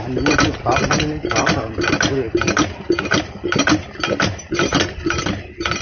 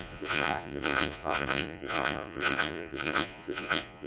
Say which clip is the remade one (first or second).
second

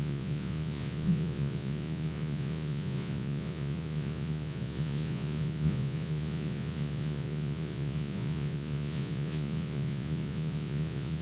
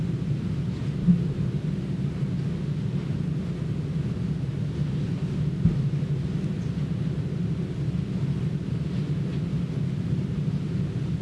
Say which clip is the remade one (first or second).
first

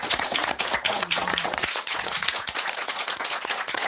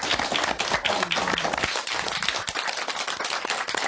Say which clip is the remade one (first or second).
first